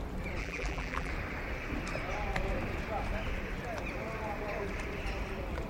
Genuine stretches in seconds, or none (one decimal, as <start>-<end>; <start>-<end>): 0.0-0.4; 1.1-5.7